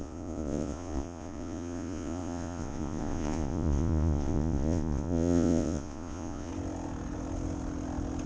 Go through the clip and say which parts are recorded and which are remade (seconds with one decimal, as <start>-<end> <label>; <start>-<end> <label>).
0.0-6.5 remade; 6.5-8.3 recorded